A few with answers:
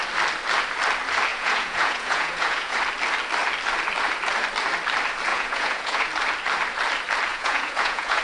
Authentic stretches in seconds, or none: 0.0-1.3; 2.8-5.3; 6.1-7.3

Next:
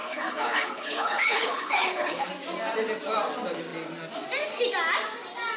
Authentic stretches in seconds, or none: 2.3-5.6

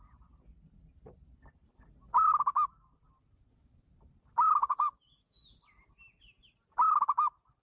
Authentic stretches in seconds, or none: 0.0-4.6; 5.6-7.6

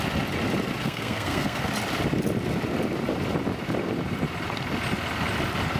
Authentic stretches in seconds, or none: 0.0-0.8; 1.7-5.8

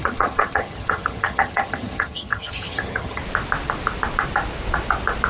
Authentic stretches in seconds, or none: 3.2-5.3

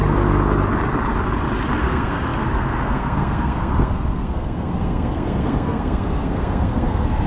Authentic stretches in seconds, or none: 0.0-1.8

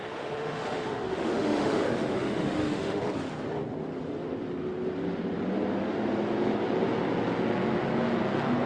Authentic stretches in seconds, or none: 3.0-8.7

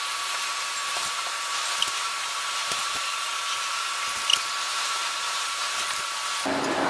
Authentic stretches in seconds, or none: 0.0-0.8; 3.9-4.7; 5.8-6.9